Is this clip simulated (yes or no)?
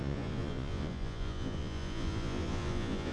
yes